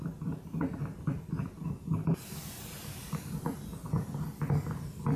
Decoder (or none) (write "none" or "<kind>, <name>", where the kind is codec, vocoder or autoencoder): none